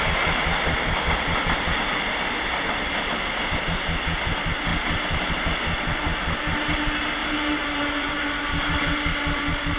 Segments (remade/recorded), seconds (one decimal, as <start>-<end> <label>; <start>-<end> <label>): 0.0-9.8 recorded